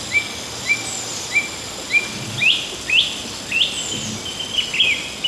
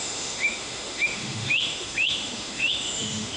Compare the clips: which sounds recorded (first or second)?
first